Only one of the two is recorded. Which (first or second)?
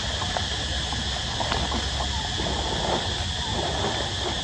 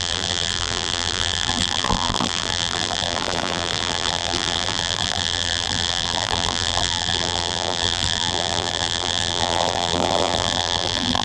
first